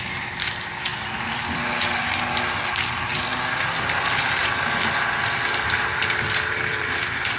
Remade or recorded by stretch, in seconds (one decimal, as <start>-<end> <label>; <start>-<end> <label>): 0.0-7.4 recorded